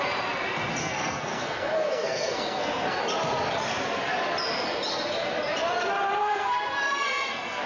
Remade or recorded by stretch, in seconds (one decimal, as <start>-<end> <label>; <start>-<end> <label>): 0.0-0.8 recorded; 0.8-3.0 remade; 3.0-6.2 recorded; 6.2-7.7 remade